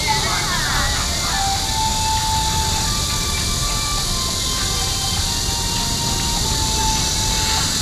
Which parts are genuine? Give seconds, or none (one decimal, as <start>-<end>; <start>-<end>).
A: 0.0-7.8